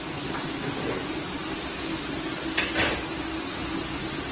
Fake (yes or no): no